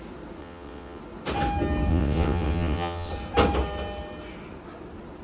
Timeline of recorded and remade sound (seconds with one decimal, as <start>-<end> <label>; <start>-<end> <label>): 0.0-0.4 recorded; 0.4-1.0 remade; 1.0-1.9 recorded; 1.9-3.1 remade; 3.1-5.2 recorded